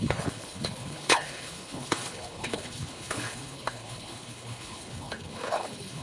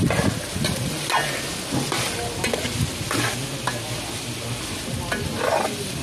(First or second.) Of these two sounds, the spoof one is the first